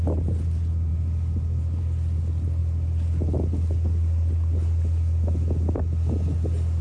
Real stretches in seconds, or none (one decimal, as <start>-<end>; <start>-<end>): 0.0-6.8